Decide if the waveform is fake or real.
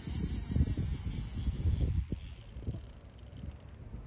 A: real